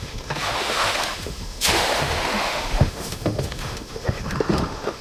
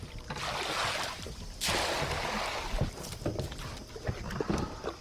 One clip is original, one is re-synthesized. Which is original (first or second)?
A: second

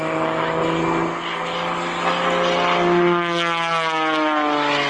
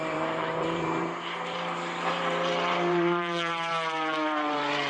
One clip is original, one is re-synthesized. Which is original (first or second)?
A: first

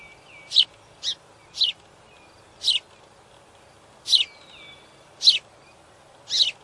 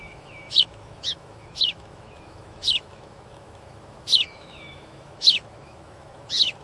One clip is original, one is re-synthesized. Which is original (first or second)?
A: first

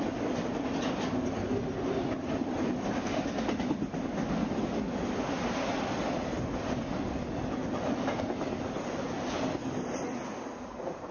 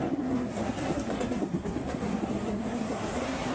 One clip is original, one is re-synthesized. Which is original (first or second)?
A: first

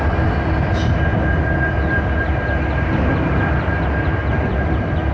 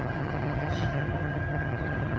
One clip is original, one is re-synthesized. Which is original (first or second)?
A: first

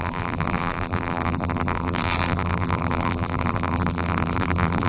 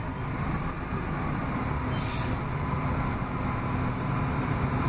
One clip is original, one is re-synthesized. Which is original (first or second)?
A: second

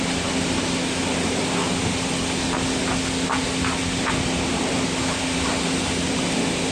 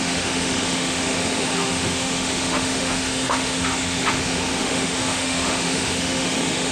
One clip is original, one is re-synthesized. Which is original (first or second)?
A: first